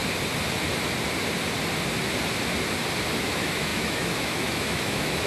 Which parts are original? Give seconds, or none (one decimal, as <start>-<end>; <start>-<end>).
0.0-3.2